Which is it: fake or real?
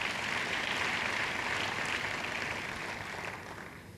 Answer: real